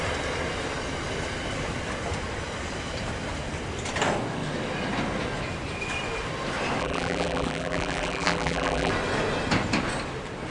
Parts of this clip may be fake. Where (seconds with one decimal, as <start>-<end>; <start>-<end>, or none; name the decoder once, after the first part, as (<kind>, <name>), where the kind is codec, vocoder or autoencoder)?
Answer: 6.8-8.9 (vocoder, BigVGAN v2)